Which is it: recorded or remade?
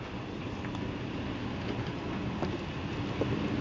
remade